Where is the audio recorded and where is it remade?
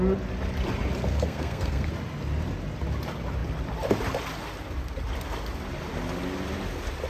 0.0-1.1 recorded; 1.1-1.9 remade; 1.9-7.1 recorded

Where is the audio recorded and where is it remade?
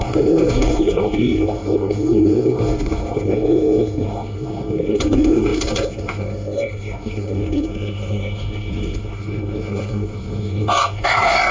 0.0-11.5 remade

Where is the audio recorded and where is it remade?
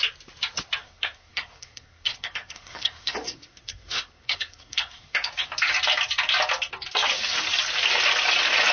0.0-0.8 recorded; 0.8-5.3 remade; 5.3-8.7 recorded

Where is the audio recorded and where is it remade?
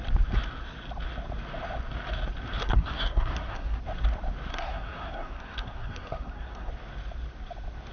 0.0-2.6 recorded; 2.6-3.8 remade; 3.8-4.5 recorded; 4.5-6.7 remade; 6.7-7.9 recorded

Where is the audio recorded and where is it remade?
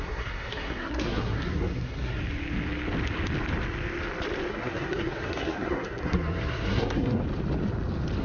0.0-2.2 remade; 2.2-4.5 recorded; 4.5-7.2 remade; 7.2-8.2 recorded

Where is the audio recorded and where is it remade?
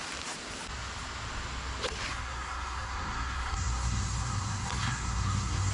0.0-2.1 recorded; 2.1-5.7 remade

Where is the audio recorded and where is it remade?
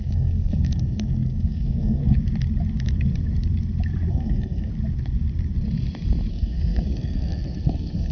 0.0-2.0 remade; 2.0-4.1 recorded; 4.1-4.7 remade; 4.7-6.3 recorded; 6.3-8.1 remade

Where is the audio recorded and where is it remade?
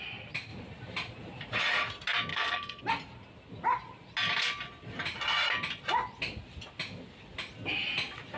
0.0-2.3 recorded; 2.3-2.8 remade; 2.8-8.4 recorded